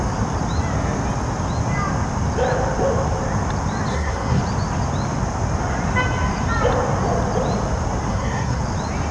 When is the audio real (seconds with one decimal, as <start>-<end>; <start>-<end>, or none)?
0.0-3.9; 4.4-8.1; 8.6-9.1